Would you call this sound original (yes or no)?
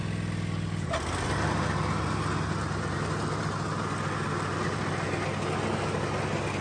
yes